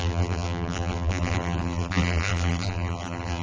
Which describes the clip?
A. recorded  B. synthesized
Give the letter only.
B